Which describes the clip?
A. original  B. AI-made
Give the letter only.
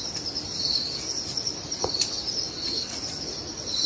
B